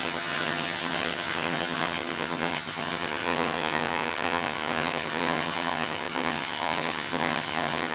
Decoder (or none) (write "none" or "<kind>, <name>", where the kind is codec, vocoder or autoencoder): vocoder, HiFi-GAN